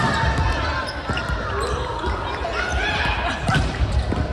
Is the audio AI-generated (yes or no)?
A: no